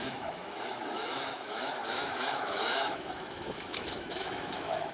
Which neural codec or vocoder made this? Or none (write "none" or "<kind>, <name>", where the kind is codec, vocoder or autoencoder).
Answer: autoencoder, DAC-VAE